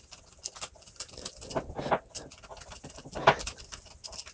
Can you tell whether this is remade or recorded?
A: recorded